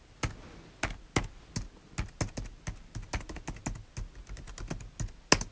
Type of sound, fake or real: real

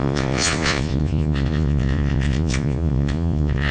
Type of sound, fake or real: fake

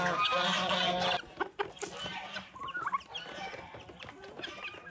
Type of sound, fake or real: real